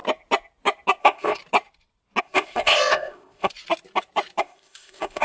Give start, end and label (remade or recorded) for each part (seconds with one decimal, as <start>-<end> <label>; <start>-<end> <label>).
0.0-1.0 recorded; 1.0-1.4 remade; 1.4-2.2 recorded; 2.2-3.5 remade; 3.5-4.4 recorded; 4.4-5.2 remade